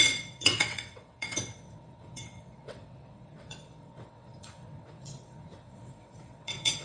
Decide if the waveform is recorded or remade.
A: remade